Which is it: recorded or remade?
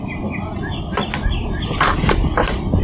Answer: recorded